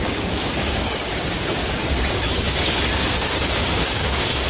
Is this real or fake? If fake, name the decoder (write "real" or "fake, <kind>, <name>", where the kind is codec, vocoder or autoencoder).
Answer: fake, codec, DAC